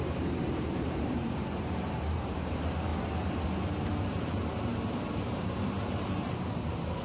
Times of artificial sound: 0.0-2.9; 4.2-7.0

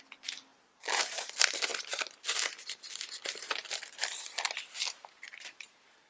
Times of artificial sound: 0.5-1.2

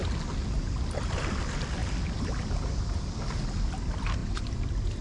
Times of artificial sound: 0.4-0.9; 4.2-5.0

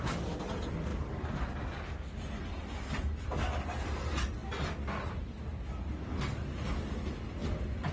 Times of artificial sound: none

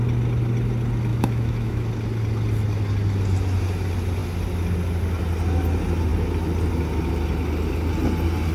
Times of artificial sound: 1.1-1.9

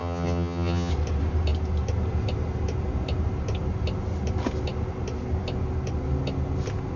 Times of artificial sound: 0.0-0.9

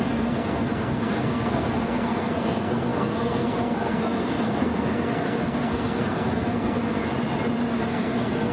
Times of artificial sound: 0.0-7.0; 7.8-8.5